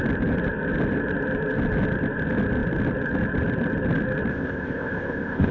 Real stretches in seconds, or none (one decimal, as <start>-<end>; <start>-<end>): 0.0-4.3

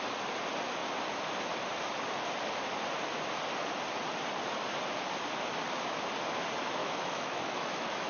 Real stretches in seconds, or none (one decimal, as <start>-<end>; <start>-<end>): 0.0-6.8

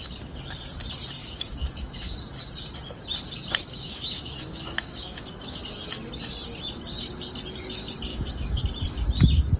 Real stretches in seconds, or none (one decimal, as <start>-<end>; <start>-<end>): 0.0-1.2; 2.2-3.6; 5.6-8.1; 8.6-9.6

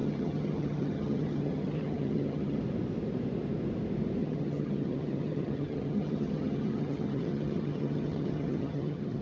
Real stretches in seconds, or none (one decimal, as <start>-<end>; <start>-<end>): 2.6-4.2

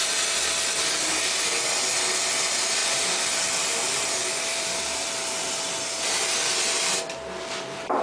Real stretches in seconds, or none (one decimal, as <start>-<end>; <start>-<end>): 0.0-2.8; 6.5-8.0